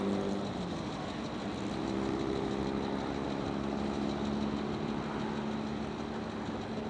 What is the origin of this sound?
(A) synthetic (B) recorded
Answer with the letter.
B